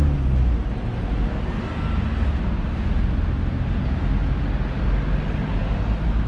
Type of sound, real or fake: real